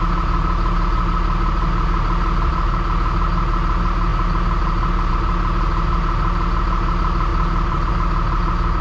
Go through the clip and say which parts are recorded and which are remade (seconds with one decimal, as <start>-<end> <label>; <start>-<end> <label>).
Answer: 0.0-7.3 recorded; 7.3-7.9 remade; 7.9-8.8 recorded